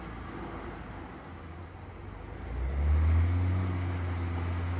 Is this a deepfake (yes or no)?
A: no